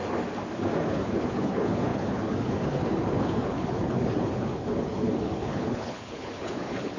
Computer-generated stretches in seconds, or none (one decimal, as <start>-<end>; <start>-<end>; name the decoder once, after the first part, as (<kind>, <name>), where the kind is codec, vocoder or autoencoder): 0.8-7.0 (codec, HILCodec)

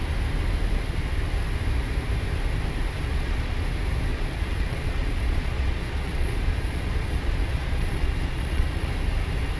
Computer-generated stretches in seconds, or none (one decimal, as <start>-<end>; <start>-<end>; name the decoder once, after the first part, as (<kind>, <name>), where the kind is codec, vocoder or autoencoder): 3.1-3.6 (vocoder, Vocos); 4.1-8.9

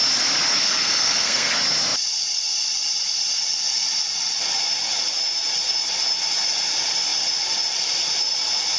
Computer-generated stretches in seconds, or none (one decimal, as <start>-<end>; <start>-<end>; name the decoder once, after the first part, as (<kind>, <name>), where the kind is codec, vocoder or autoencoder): 0.6-1.5 (codec, SNAC)

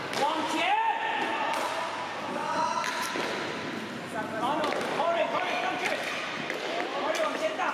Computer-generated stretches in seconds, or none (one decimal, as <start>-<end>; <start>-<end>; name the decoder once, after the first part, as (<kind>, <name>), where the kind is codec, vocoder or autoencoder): 6.9-7.7 (vocoder, BigVGAN v2)

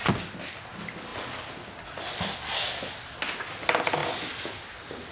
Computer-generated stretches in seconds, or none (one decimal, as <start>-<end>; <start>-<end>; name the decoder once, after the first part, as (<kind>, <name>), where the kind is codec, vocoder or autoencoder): none

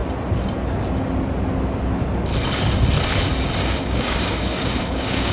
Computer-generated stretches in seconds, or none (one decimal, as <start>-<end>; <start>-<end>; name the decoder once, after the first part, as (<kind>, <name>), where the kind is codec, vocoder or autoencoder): 3.6-5.3 (codec, DAC)